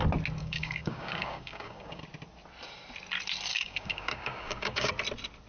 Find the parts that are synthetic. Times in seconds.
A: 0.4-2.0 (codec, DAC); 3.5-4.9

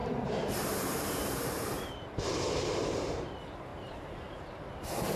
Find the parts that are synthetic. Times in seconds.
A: 0.0-3.1 (vocoder, BigVGAN v2); 3.7-4.4

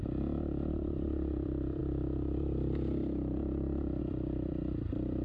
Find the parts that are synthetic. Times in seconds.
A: 0.7-1.8 (vocoder, BigVGAN v2); 4.0-5.2

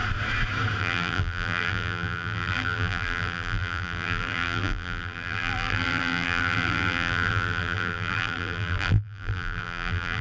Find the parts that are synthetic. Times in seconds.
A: 0.8-10.2 (vocoder, BigVGAN v2)